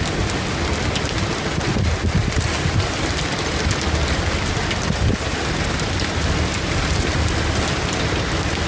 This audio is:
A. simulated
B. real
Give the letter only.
B